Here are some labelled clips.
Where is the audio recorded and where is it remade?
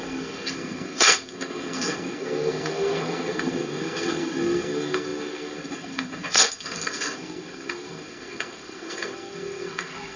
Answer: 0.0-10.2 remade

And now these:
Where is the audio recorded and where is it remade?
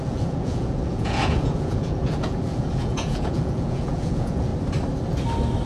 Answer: 0.0-4.5 remade; 4.5-5.7 recorded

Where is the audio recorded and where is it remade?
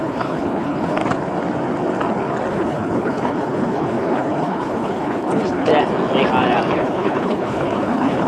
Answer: 0.0-1.0 remade; 1.0-2.5 recorded; 2.5-5.7 remade; 5.7-6.7 recorded; 6.7-8.3 remade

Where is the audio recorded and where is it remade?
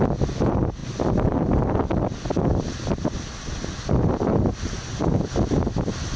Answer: 0.0-6.2 recorded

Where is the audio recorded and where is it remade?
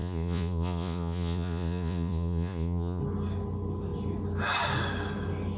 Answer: 0.0-3.0 remade; 3.0-5.6 recorded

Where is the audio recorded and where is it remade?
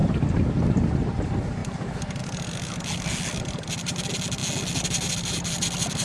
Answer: 0.0-6.0 recorded